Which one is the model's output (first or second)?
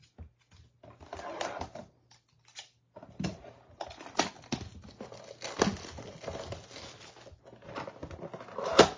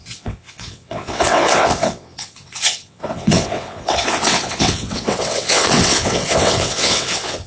second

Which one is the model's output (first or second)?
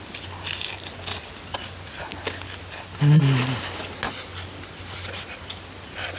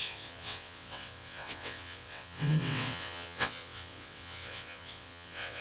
second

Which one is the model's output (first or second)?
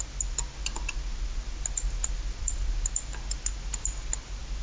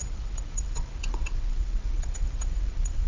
second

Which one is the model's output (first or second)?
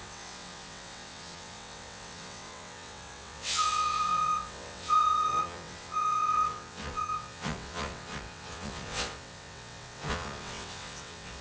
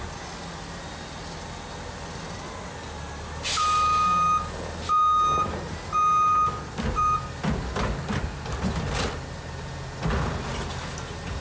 first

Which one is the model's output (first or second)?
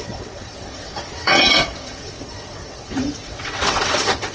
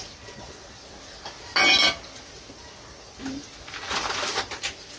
first